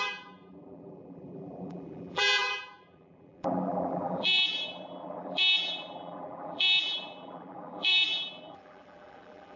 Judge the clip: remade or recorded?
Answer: remade